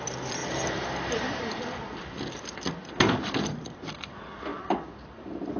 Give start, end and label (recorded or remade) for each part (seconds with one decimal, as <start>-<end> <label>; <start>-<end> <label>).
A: 0.0-0.4 remade; 0.4-1.4 recorded; 1.4-4.5 remade; 4.5-5.6 recorded